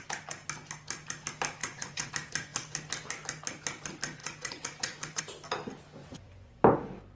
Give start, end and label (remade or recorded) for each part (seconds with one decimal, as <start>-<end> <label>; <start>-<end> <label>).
0.0-1.6 recorded; 1.6-2.1 remade; 2.1-4.2 recorded; 4.2-5.2 remade; 5.2-6.0 recorded; 6.0-6.6 remade; 6.6-7.2 recorded